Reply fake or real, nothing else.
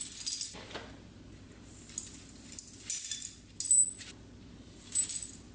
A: real